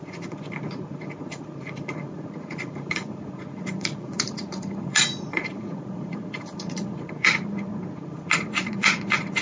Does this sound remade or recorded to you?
remade